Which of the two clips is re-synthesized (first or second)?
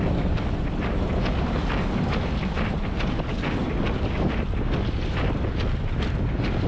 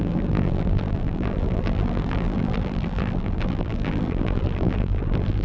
second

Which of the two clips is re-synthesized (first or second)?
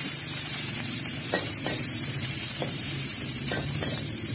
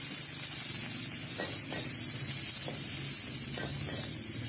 first